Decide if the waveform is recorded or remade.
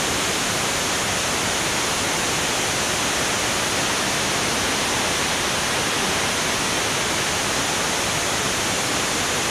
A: recorded